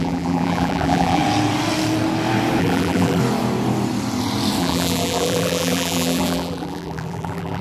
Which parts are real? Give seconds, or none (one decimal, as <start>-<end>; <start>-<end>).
1.2-2.6; 3.2-4.6